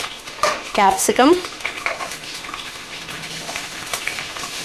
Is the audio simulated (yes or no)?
yes